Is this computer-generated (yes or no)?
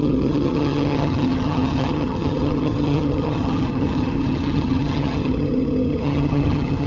yes